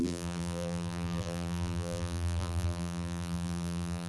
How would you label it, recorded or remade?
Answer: remade